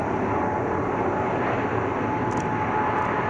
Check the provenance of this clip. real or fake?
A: real